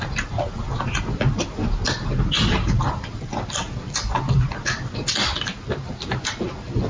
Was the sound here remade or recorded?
recorded